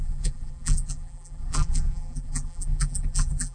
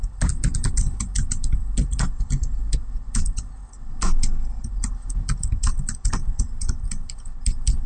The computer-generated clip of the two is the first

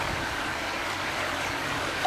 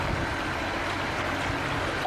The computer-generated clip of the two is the first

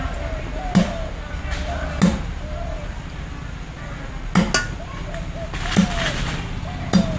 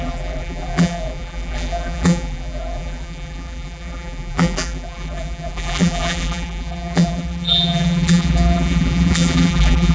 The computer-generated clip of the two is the second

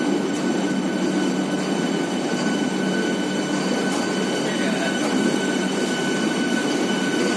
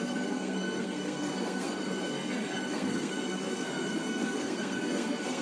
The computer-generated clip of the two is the second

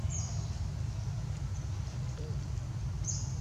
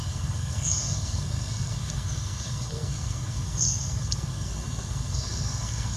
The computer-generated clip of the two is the second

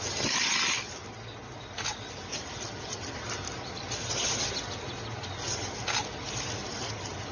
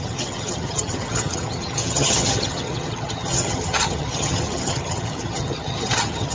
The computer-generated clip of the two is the second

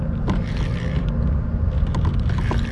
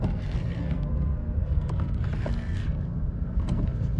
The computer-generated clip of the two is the second